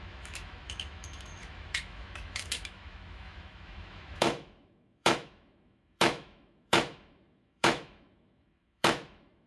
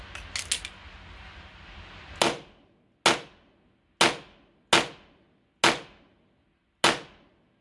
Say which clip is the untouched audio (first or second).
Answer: second